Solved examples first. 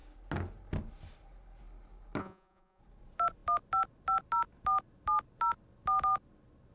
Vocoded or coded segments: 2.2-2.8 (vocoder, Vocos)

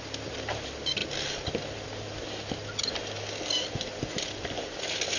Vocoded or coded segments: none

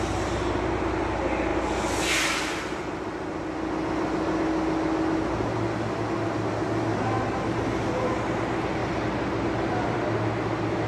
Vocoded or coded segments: none

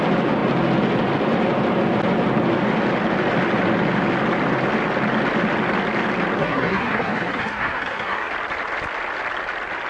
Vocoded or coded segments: 6.4-8.3 (codec, SNAC)

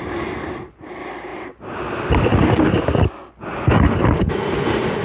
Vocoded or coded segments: none

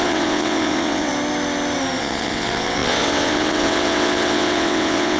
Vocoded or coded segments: 0.0-1.1 (vocoder, WaveNeXt); 2.0-5.2

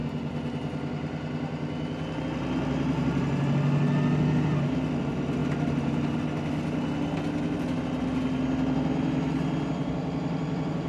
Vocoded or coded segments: 5.4-6.3 (vocoder, BigVGAN v2)

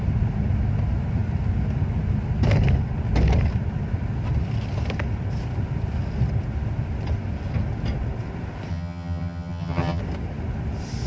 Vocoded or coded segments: 8.7-10.0 (vocoder, HiFi-GAN)